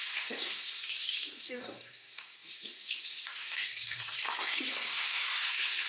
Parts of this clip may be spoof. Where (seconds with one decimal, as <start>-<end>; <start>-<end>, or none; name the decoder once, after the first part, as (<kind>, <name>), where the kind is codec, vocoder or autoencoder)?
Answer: 0.0-5.9 (codec, SNAC)

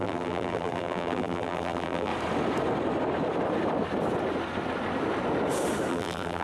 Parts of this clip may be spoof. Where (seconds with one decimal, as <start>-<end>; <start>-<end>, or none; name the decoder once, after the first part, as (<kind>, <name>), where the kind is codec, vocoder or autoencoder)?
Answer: 0.0-2.1 (vocoder, BigVGAN v2); 5.9-6.4

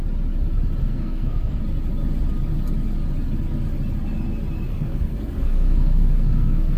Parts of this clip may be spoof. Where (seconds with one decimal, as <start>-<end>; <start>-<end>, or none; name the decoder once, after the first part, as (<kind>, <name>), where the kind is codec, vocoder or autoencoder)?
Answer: 0.8-1.6 (codec, SNAC); 4.7-6.8

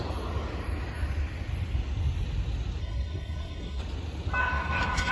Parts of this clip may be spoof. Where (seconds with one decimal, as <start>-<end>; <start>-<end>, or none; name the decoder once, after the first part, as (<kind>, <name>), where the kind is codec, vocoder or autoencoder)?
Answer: 2.8-3.8 (codec, SNAC); 4.4-5.1

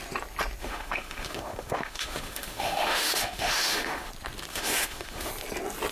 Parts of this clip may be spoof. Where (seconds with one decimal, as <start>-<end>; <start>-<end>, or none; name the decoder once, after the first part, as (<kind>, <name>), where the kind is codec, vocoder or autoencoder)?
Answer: 0.6-4.1 (autoencoder, DAC-VAE); 4.5-5.3

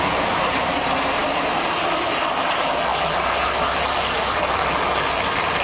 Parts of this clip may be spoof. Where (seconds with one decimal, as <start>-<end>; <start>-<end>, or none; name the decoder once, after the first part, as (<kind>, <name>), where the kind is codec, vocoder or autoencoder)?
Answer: none

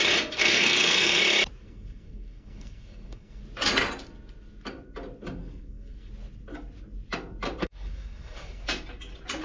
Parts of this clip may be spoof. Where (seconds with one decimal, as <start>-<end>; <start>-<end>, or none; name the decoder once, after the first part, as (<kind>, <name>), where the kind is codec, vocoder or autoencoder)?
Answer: 0.4-1.2 (codec, SNAC); 1.6-3.4; 5.4-6.1; 7.6-8.6

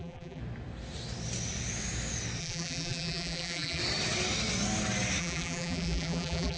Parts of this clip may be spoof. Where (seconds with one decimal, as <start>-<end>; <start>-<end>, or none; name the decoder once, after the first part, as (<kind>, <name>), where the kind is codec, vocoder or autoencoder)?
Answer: 0.0-0.4 (vocoder, BigVGAN v2); 2.4-3.8; 5.2-6.6